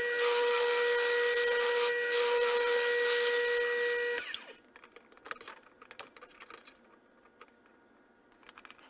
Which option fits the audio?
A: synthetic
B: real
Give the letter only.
B